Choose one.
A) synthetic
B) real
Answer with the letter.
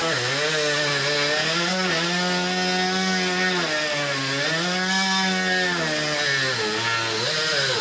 B